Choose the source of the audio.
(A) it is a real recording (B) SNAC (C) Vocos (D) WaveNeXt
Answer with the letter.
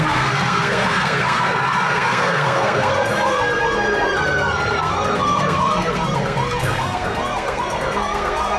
B